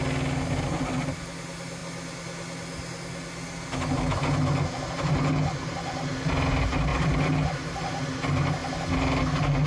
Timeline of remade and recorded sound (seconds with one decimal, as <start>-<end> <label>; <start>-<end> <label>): 0.0-9.7 recorded